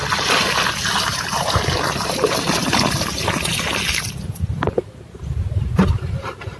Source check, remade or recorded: recorded